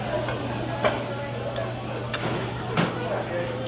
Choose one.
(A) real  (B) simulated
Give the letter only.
A